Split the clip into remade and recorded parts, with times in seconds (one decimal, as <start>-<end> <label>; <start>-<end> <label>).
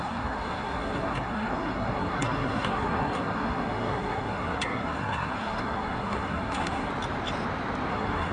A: 0.0-6.9 remade; 6.9-7.9 recorded; 7.9-8.3 remade